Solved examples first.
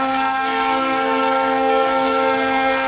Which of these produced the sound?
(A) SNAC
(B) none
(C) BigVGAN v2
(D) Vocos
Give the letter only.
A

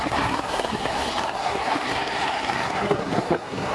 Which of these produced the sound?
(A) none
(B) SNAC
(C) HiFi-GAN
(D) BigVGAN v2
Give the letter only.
B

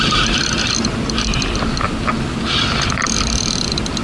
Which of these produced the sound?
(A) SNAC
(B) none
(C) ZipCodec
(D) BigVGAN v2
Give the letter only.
B